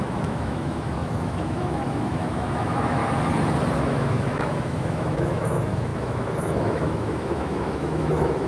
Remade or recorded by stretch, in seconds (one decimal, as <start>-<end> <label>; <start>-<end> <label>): 0.0-3.0 remade; 3.0-3.8 recorded; 3.8-8.5 remade

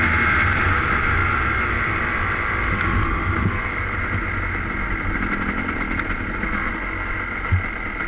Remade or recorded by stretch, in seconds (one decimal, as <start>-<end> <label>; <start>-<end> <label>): 0.0-8.1 recorded

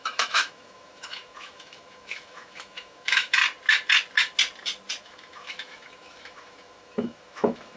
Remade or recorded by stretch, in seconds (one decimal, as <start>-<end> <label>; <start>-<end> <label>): 0.0-3.4 remade; 3.4-5.0 recorded; 5.0-7.8 remade

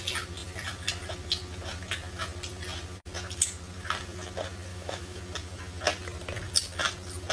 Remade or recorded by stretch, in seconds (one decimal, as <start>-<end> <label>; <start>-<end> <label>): 0.0-4.7 recorded; 4.7-5.2 remade; 5.2-7.3 recorded

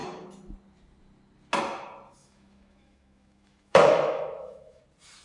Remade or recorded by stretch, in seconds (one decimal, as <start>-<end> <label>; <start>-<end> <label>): 0.0-2.2 recorded; 2.2-4.8 remade; 4.8-5.2 recorded